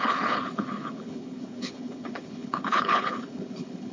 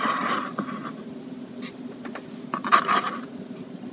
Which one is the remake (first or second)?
first